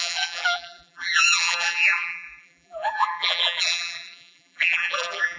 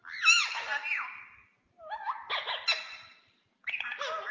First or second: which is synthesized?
first